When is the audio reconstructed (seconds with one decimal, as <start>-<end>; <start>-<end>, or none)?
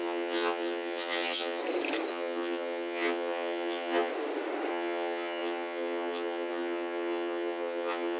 0.0-1.6; 2.1-4.1; 4.7-8.2